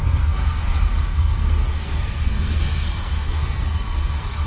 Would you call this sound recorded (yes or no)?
no